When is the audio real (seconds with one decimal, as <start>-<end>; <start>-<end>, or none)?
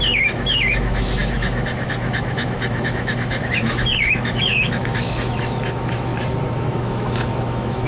6.1-6.6